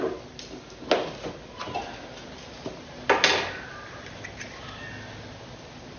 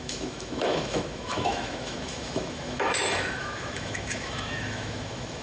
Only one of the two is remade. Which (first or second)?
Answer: second